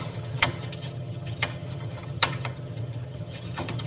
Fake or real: fake